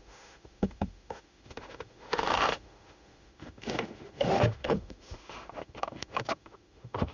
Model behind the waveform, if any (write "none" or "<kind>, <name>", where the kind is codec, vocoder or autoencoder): autoencoder, DAC-VAE